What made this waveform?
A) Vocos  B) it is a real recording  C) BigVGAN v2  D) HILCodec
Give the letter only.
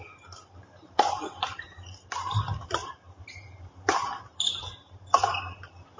C